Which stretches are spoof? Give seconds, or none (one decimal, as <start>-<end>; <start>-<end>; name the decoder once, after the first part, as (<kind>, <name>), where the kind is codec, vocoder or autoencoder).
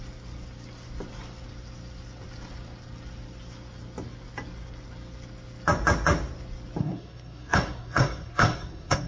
6.8-9.1 (codec, SNAC)